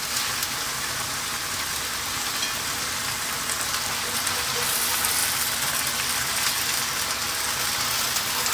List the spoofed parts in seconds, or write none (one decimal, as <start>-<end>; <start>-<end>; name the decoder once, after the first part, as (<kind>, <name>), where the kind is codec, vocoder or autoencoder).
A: none